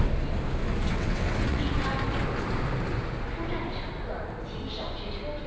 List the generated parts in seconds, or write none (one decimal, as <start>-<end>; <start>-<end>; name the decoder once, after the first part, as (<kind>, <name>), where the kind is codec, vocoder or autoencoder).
0.9-1.7 (vocoder, WaveNeXt)